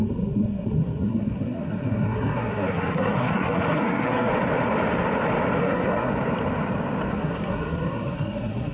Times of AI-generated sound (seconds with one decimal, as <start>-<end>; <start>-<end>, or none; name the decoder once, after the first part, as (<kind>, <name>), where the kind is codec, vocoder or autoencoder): 0.0-4.3 (codec, SNAC); 5.6-6.1; 7.1-8.7